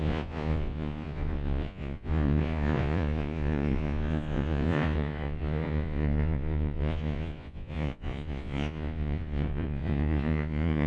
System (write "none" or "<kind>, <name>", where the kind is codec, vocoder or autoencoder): vocoder, Vocos